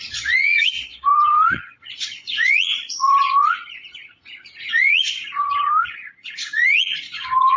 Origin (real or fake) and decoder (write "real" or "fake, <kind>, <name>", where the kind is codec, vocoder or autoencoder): fake, vocoder, Vocos